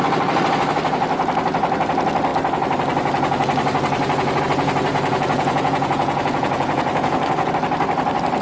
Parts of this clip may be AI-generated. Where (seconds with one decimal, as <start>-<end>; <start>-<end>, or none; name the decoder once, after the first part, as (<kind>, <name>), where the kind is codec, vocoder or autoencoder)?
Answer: 4.9-7.5 (vocoder, Vocos)

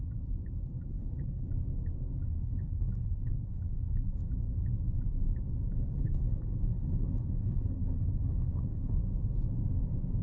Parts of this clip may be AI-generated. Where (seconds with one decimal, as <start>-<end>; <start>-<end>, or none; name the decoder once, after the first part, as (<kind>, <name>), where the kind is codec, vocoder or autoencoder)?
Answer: 0.9-1.5 (codec, HILCodec); 2.2-4.3; 5.7-9.0

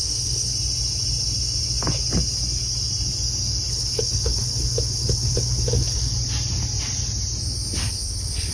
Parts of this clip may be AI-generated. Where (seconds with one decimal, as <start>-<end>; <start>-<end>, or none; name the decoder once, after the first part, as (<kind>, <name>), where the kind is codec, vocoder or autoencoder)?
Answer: 0.0-0.5 (codec, HILCodec); 3.7-6.1; 7.9-8.5

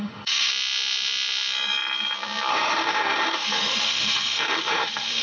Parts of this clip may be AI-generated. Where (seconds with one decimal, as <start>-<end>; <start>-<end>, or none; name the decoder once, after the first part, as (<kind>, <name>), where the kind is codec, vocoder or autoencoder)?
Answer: 0.0-0.5 (autoencoder, DAC-VAE); 2.5-5.2

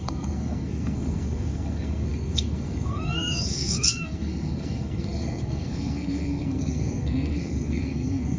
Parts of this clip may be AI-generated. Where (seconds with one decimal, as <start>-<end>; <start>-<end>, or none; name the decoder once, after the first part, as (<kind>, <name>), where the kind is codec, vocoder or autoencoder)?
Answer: 0.0-8.4 (codec, SNAC)

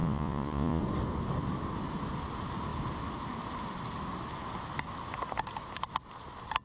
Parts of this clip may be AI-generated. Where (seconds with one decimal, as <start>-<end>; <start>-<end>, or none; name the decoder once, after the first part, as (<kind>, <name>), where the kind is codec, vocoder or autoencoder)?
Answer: 0.0-0.8 (vocoder, Vocos)